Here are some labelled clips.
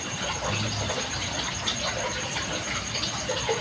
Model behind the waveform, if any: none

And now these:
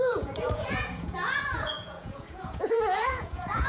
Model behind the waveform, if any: vocoder, Vocos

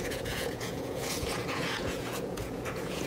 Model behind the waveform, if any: vocoder, Vocos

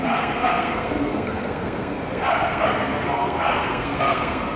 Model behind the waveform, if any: codec, SNAC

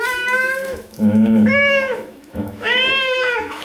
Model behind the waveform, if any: autoencoder, DAC-VAE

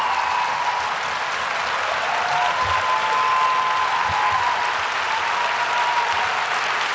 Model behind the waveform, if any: none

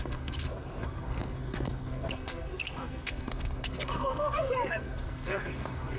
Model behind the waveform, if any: codec, SNAC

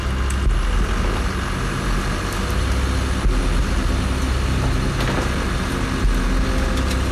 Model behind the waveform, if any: none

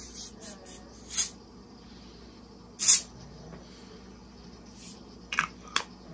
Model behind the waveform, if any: none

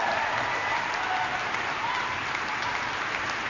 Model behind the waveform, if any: none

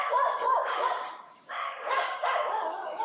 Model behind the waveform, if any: codec, DAC